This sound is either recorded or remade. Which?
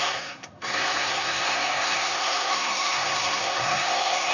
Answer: remade